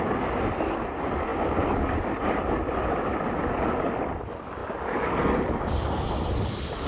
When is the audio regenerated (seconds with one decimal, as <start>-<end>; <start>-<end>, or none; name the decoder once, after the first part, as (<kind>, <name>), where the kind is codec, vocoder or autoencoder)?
1.3-2.0 (vocoder, BigVGAN v2); 2.4-3.4; 4.6-5.8